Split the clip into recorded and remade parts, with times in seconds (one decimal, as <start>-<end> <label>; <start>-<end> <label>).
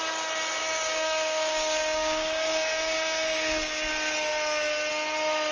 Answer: 0.0-0.6 recorded; 0.6-3.9 remade; 3.9-5.5 recorded